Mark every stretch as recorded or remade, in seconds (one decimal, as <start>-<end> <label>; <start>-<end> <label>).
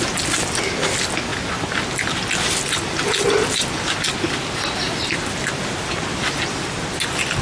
0.0-7.4 recorded